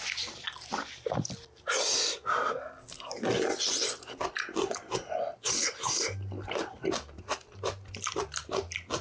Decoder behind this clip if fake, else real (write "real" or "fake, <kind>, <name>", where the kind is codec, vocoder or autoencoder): real